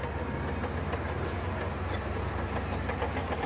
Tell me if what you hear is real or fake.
real